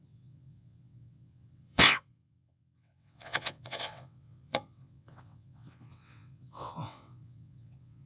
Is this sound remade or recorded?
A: remade